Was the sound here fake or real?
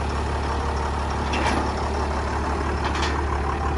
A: real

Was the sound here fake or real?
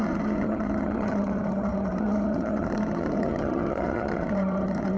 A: fake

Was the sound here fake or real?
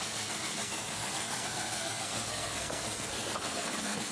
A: fake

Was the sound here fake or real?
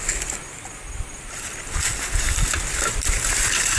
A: real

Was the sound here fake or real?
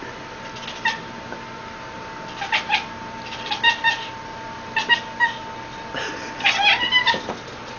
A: real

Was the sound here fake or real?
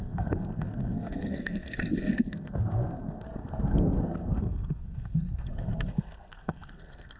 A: fake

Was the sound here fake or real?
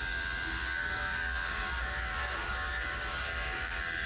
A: fake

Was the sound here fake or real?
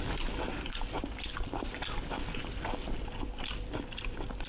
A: real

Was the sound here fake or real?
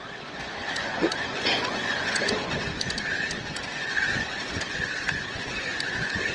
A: fake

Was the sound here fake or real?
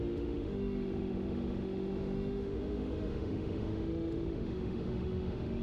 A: fake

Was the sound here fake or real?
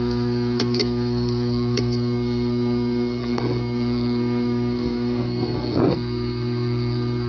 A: fake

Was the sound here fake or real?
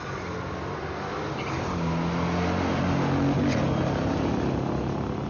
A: real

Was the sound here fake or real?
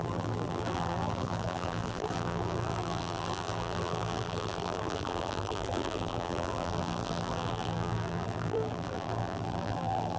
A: fake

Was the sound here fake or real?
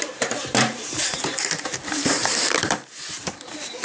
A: fake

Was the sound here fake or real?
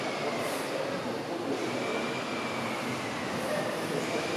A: real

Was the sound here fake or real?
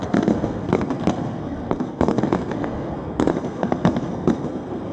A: fake